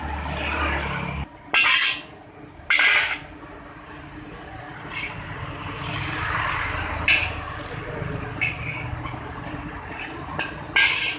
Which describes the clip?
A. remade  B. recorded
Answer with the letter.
B